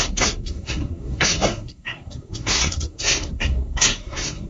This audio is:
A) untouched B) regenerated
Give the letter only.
B